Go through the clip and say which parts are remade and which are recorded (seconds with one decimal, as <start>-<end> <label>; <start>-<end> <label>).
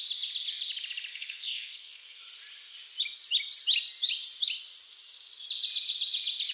0.0-1.1 recorded; 1.1-2.2 remade; 2.2-6.5 recorded